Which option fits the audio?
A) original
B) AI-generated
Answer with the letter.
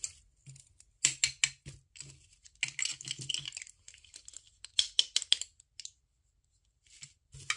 A